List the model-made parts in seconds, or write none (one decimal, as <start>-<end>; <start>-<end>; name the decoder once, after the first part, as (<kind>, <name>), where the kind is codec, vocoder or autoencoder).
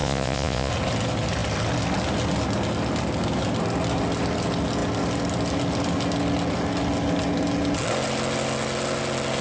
0.0-0.7 (vocoder, Vocos)